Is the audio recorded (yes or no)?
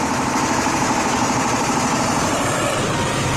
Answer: no